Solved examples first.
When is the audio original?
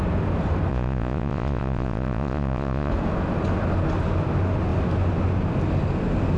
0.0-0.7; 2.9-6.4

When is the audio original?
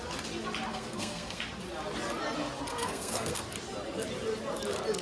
0.0-0.7; 1.4-2.7; 3.4-5.0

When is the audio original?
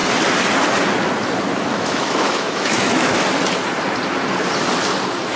0.0-1.7; 3.2-5.4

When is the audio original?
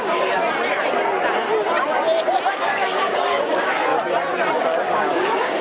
0.4-2.5; 3.9-4.6